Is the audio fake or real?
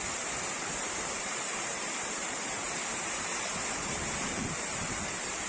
fake